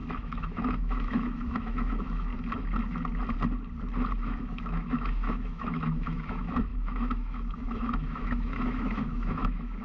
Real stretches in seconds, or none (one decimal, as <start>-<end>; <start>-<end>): 2.3-4.2